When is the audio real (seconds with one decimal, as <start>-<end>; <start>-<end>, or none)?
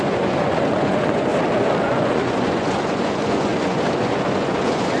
1.3-1.8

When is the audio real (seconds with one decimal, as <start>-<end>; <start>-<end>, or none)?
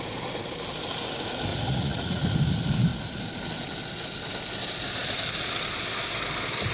0.0-1.5; 2.3-6.7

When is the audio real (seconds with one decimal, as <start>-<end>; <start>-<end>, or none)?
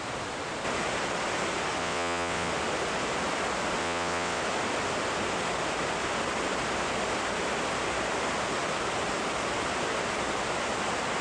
0.0-1.8; 2.5-3.8; 4.4-11.2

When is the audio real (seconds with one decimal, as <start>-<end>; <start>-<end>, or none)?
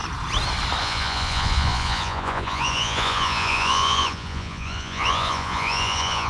0.0-0.8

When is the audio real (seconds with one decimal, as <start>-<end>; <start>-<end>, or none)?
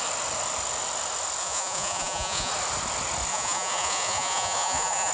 0.0-1.4; 2.5-3.3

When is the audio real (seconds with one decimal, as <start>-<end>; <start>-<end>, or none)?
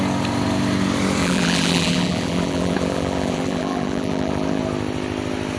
0.0-1.2; 4.6-5.6